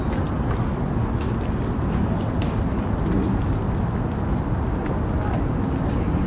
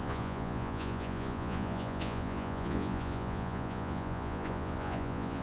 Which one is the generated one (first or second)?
second